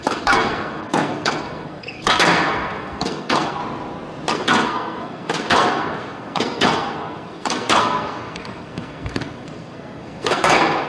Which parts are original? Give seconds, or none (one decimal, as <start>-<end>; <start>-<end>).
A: 3.6-4.3